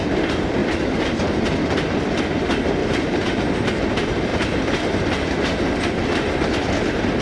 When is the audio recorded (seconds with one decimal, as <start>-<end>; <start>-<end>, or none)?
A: 0.0-0.6; 1.5-2.8; 3.7-7.2